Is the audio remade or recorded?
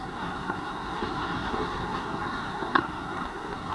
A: remade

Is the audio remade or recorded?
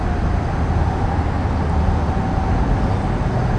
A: recorded